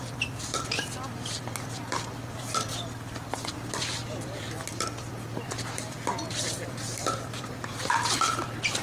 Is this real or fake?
fake